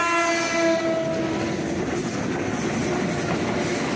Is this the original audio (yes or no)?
yes